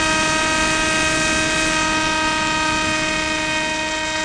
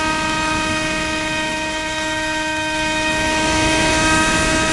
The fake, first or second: second